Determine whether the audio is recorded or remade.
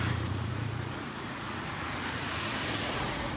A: remade